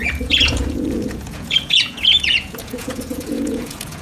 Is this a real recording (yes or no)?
no